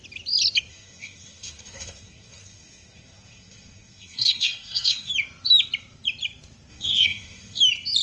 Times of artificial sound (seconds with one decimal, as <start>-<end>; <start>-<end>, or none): 0.7-5.1; 6.7-7.6

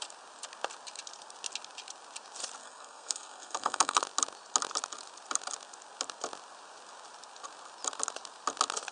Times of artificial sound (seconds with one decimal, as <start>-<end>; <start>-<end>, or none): 2.6-4.0